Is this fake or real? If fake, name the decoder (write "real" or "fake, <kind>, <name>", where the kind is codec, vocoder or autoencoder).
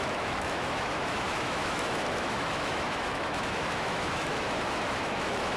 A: fake, autoencoder, DAC-VAE